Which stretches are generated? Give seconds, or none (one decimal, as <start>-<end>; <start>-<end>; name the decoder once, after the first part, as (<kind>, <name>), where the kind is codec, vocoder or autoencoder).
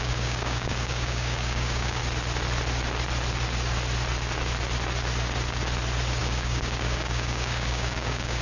0.0-2.0 (codec, DAC); 6.2-8.4